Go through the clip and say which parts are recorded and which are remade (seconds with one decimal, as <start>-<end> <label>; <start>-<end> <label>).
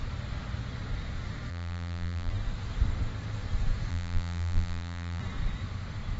0.0-1.5 recorded; 1.5-2.3 remade; 2.3-3.9 recorded; 3.9-5.2 remade; 5.2-6.2 recorded